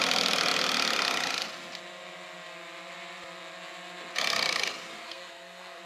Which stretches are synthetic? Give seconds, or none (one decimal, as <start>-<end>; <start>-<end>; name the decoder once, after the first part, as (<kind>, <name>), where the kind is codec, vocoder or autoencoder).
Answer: 5.0-5.8 (codec, SNAC)